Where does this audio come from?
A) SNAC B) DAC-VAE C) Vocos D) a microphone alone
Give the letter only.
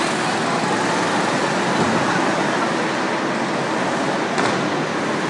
D